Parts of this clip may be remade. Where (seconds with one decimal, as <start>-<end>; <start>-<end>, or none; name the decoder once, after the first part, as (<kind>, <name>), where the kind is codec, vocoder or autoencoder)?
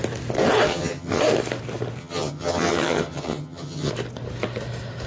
0.7-1.2 (vocoder, HiFi-GAN); 2.0-3.9